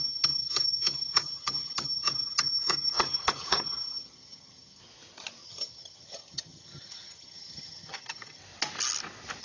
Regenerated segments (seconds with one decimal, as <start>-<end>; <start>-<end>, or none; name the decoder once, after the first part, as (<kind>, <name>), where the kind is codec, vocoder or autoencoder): 0.0-4.8 (vocoder, HiFi-GAN); 5.4-8.4

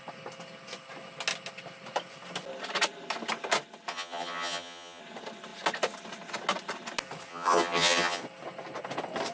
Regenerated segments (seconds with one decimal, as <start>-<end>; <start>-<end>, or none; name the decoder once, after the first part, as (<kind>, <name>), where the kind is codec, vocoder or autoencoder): 3.9-5.0 (vocoder, HiFi-GAN); 7.3-8.2

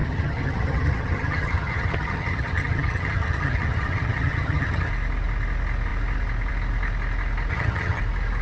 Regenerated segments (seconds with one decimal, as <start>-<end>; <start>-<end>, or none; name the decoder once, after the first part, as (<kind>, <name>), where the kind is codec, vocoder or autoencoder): 0.0-4.9 (vocoder, HiFi-GAN); 7.5-8.0

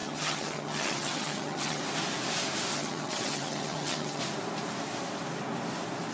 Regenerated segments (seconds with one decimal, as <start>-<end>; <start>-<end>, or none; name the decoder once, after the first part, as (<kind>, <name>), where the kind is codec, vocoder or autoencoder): 0.0-1.8 (vocoder, HiFi-GAN); 2.7-4.2

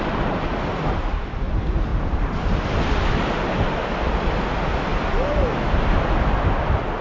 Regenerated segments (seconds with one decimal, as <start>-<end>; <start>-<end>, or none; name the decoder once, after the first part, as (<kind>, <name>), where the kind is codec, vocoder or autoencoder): none

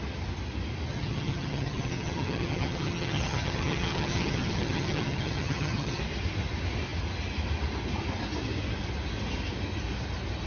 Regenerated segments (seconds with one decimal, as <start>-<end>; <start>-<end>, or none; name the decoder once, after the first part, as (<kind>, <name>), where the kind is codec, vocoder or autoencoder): 0.9-6.0 (vocoder, HiFi-GAN)